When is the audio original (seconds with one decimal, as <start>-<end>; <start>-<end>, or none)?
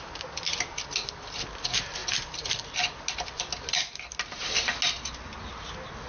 0.0-6.1